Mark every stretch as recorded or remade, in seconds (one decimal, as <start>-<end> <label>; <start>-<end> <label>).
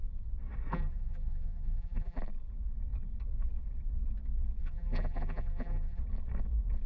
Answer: 0.0-0.7 recorded; 0.7-2.2 remade; 2.2-4.6 recorded; 4.6-6.0 remade; 6.0-6.9 recorded